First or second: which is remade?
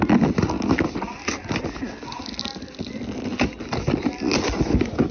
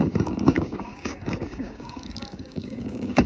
second